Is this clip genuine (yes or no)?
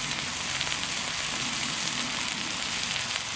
yes